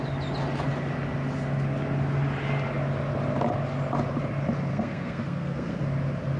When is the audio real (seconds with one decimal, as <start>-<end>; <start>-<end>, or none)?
0.0-4.7; 5.8-6.4